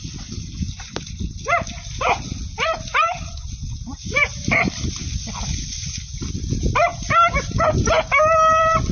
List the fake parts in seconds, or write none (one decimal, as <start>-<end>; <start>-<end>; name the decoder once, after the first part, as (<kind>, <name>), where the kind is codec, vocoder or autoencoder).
none